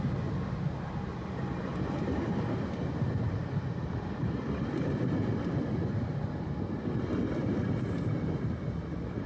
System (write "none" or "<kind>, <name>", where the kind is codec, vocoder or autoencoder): none